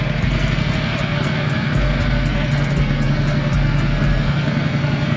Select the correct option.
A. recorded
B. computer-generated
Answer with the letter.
B